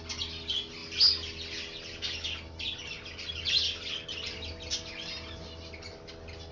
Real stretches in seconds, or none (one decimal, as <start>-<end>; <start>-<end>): 0.0-6.5